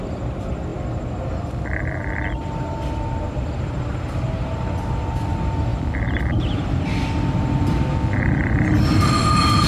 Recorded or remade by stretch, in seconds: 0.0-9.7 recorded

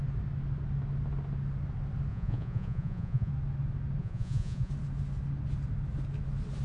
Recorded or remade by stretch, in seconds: 0.0-2.1 recorded; 2.1-3.3 remade; 3.3-4.0 recorded; 4.0-4.7 remade; 4.7-6.6 recorded

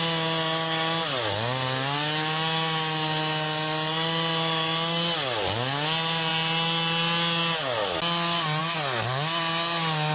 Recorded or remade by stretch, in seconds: 0.0-10.1 recorded

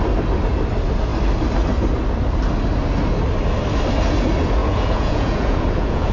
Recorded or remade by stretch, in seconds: 0.0-4.6 recorded; 4.6-6.1 remade

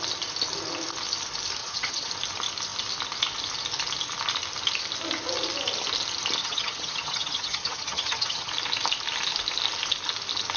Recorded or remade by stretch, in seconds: 0.0-1.6 recorded; 1.6-2.1 remade; 2.1-6.4 recorded; 6.4-8.5 remade; 8.5-10.6 recorded

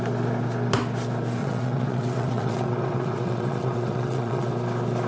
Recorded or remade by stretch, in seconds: 0.0-1.4 recorded; 1.4-4.5 remade; 4.5-5.1 recorded